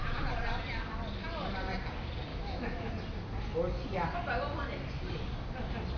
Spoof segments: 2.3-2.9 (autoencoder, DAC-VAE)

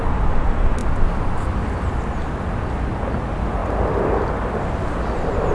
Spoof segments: none

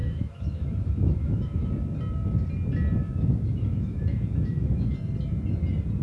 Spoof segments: 0.0-1.7 (autoencoder, DAC-VAE); 3.0-4.9